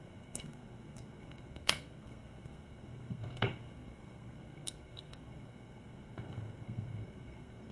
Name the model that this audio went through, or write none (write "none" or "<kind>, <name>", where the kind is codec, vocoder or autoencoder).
codec, SNAC